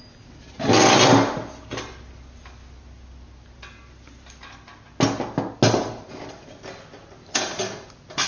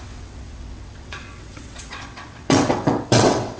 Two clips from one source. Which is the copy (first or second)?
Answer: second